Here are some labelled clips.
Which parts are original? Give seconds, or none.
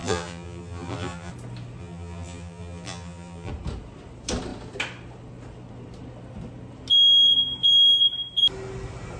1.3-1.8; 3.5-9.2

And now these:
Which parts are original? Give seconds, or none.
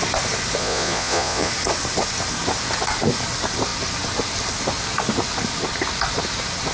0.0-0.6; 1.5-6.7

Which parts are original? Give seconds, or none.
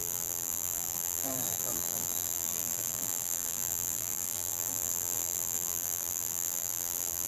none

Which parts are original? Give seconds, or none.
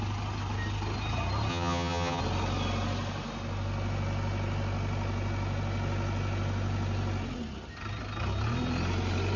0.0-1.5; 2.2-9.4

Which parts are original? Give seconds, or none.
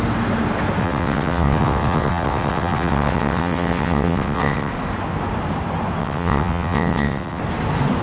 0.0-0.8; 4.7-6.0; 7.4-8.0